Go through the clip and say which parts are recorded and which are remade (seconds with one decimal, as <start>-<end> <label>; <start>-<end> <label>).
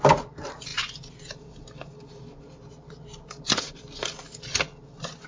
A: 0.0-5.3 recorded